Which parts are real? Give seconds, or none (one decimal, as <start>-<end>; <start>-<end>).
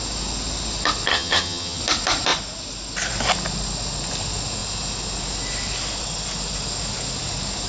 0.0-1.1; 1.8-7.7